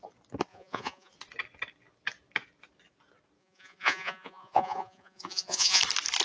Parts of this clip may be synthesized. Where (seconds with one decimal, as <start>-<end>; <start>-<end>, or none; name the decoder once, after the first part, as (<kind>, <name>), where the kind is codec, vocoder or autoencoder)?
0.5-1.1 (vocoder, Vocos); 3.4-5.8